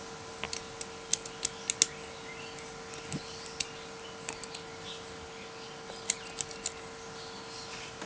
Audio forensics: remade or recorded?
recorded